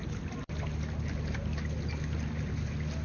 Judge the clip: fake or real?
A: real